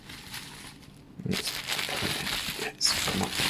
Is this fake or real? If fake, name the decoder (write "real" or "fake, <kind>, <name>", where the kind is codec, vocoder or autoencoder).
real